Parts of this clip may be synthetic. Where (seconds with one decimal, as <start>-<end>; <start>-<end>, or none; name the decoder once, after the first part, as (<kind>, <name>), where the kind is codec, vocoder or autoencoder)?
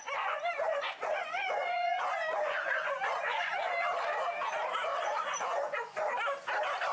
0.0-3.7 (vocoder, Vocos); 4.9-6.1